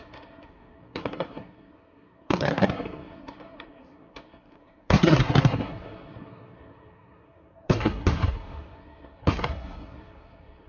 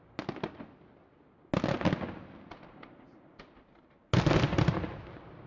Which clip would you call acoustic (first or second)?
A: second